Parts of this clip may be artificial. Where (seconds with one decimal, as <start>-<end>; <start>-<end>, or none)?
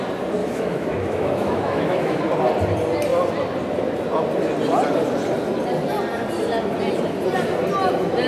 0.4-2.2